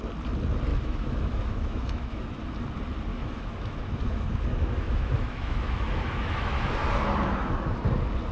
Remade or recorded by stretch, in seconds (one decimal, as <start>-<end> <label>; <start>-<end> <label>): 0.0-0.7 recorded; 0.7-2.4 remade; 2.4-3.1 recorded; 3.1-6.8 remade; 6.8-8.3 recorded